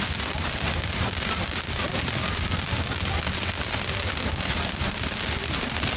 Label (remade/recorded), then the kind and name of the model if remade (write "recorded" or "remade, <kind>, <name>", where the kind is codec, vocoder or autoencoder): remade, vocoder, BigVGAN v2